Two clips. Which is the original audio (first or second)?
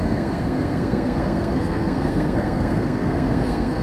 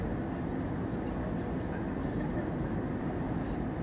second